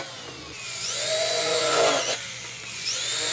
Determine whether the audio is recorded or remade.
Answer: remade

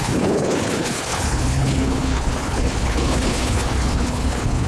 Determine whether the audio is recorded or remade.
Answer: remade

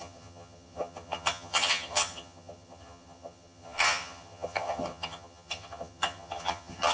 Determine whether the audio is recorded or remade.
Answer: remade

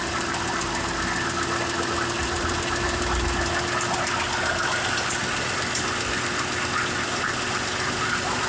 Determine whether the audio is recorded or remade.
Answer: recorded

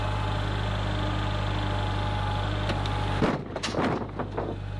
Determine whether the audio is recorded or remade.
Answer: recorded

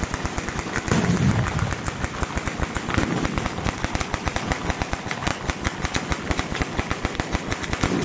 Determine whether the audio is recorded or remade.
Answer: recorded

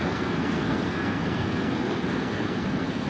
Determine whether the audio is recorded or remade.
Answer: remade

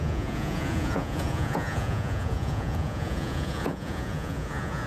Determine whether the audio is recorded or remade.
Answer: remade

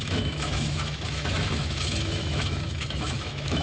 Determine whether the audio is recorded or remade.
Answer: remade